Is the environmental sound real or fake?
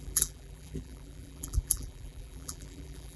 fake